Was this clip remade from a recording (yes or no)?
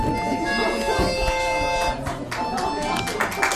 no